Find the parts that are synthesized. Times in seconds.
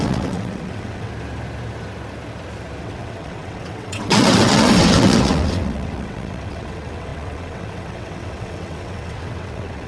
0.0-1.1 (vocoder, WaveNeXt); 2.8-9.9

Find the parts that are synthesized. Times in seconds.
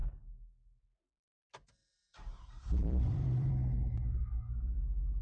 1.8-3.5 (vocoder, BigVGAN v2)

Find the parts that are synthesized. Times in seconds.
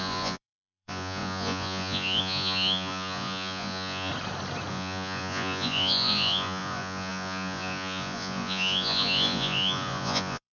0.0-4.1 (vocoder, Vocos); 4.7-10.5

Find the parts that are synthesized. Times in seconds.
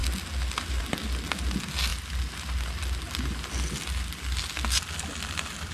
none